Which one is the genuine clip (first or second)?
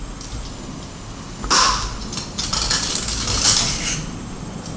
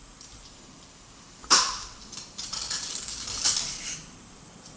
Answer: first